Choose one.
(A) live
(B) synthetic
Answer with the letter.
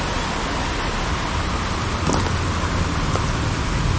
A